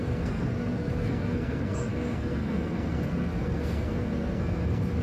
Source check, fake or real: fake